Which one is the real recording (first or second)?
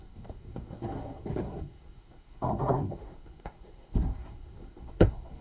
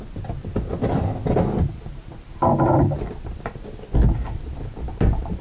second